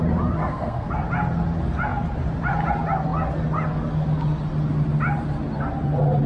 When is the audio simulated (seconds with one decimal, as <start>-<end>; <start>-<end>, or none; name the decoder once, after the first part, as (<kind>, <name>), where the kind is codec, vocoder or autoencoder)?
0.4-0.9 (codec, SNAC)